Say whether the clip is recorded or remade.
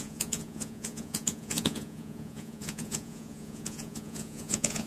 remade